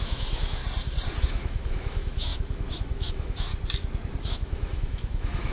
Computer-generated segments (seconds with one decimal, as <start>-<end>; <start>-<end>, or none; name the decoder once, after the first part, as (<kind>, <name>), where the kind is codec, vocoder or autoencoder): 0.0-0.6 (autoencoder, DAC-VAE); 1.2-3.5; 4.3-5.5